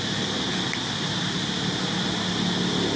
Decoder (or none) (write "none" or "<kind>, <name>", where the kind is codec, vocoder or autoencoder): none